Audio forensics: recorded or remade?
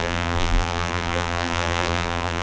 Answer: remade